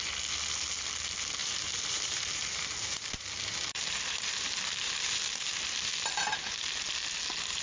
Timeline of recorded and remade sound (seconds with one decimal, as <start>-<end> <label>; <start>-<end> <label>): 0.0-1.4 recorded; 1.4-5.9 remade; 5.9-7.6 recorded